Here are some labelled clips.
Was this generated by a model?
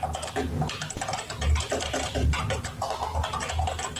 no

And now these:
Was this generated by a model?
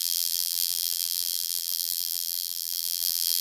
yes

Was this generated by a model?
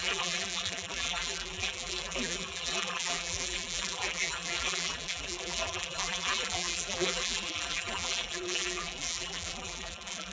yes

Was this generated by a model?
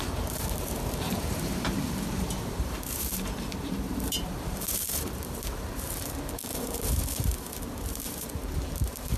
yes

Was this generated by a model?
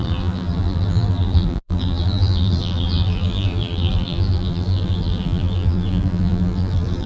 yes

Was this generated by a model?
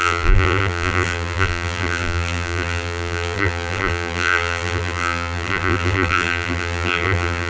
yes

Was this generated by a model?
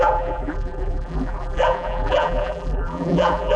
yes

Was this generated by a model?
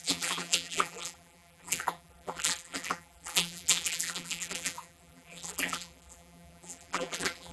yes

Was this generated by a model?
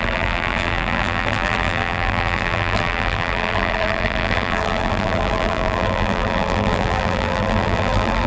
yes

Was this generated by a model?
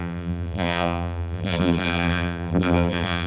yes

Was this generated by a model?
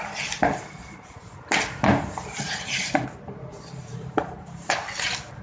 yes